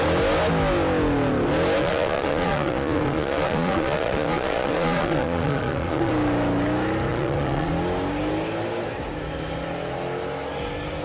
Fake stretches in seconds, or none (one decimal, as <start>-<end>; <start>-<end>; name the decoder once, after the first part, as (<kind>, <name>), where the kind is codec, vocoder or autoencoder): 1.8-6.1 (vocoder, Vocos); 7.1-7.7